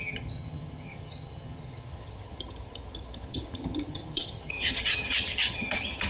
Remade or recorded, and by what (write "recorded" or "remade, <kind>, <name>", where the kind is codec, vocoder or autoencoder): remade, vocoder, HiFi-GAN